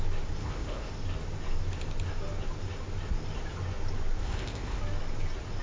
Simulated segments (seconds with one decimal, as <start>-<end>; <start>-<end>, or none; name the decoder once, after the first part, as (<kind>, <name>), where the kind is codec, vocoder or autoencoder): 0.4-0.9 (codec, ZipCodec); 4.2-4.8